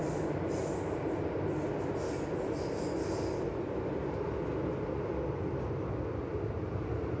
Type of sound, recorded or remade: recorded